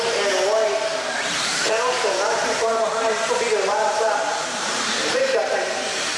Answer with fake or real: fake